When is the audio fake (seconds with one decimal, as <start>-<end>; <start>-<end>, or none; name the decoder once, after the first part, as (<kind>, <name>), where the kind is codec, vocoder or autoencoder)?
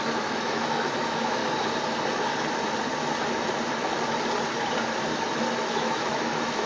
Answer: 0.0-1.4 (autoencoder, DAC-VAE); 5.4-6.7